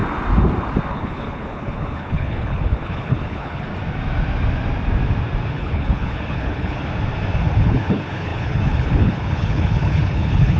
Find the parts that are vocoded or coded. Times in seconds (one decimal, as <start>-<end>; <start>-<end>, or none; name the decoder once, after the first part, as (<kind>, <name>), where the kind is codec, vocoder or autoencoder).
0.9-3.7 (codec, HILCodec); 5.5-6.9; 7.5-10.6